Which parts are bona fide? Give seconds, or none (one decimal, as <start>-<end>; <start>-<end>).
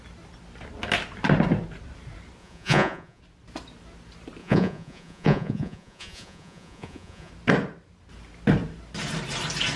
0.0-2.4; 3.2-4.4; 7.3-9.8